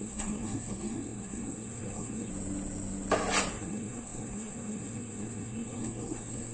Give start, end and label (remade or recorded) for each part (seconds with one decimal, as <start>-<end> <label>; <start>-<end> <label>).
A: 0.0-2.3 remade; 2.3-3.5 recorded; 3.5-6.5 remade